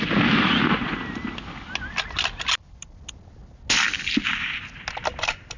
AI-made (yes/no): no